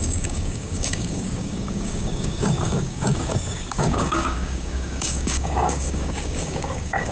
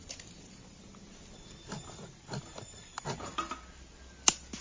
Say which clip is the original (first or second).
second